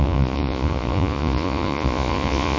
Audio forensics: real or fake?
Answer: fake